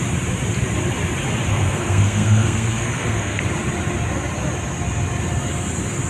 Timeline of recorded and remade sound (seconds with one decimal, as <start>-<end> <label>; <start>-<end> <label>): 0.0-1.5 recorded; 1.5-3.4 remade; 3.4-6.1 recorded

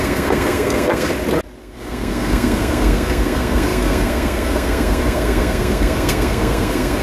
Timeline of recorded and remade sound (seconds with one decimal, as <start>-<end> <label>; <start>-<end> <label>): 0.0-1.1 remade; 1.1-1.6 recorded; 1.6-7.0 remade

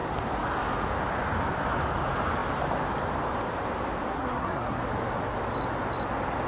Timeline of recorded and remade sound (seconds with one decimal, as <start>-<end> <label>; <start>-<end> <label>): 0.0-4.1 recorded; 4.1-4.8 remade; 4.8-6.5 recorded